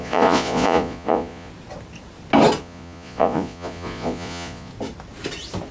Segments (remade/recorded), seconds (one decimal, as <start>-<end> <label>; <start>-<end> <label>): 0.0-1.5 remade; 1.5-2.6 recorded; 2.6-4.7 remade; 4.7-5.7 recorded